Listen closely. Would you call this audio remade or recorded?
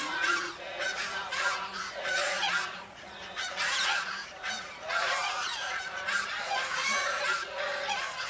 remade